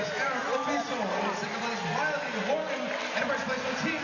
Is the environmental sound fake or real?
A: real